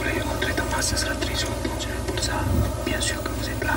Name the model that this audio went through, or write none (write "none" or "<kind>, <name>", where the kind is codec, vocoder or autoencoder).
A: none